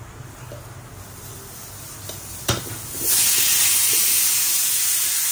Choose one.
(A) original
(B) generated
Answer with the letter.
A